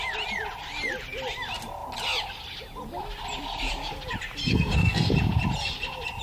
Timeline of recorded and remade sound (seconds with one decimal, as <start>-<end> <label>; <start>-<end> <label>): 0.0-4.5 recorded; 4.5-5.1 remade; 5.1-6.2 recorded